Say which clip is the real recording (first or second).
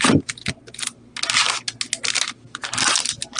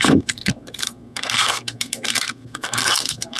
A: first